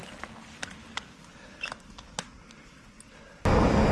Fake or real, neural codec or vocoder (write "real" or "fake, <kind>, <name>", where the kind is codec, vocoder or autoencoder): real